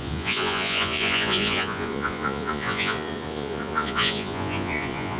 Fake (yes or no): yes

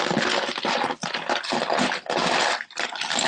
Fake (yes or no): no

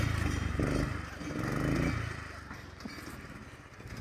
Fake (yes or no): no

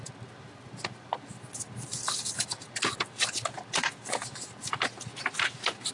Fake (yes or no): no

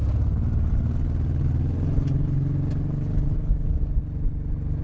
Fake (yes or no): no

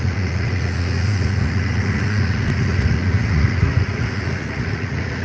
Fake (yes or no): yes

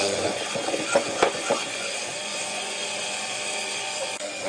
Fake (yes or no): yes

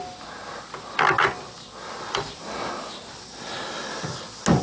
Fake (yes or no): no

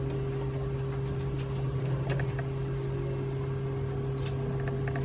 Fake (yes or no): no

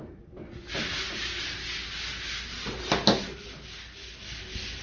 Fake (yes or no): no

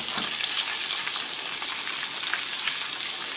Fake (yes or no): no